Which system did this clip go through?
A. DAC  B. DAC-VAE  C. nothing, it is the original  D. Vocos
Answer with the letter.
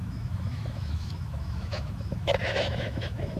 B